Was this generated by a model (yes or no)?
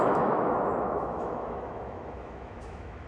yes